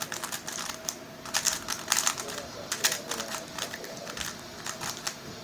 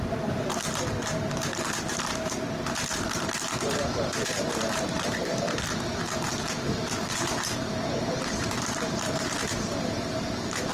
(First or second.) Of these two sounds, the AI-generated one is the second